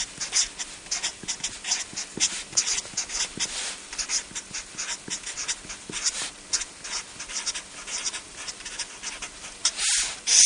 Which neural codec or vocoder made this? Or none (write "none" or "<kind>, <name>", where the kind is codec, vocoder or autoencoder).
none